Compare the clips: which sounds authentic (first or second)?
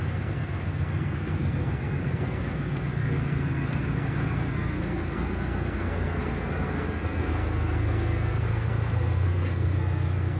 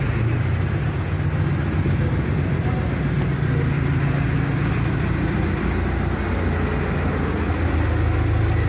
second